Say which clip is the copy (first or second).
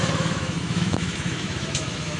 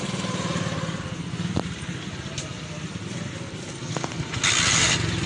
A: first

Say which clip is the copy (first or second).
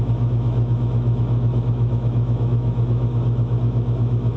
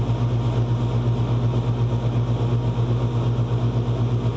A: first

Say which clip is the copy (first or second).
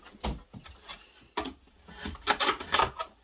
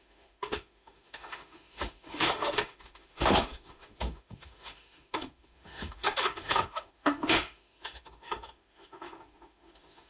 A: second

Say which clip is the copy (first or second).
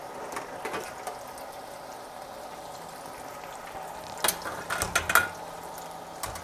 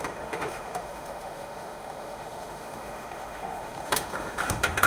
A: second